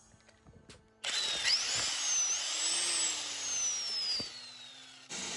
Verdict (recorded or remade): recorded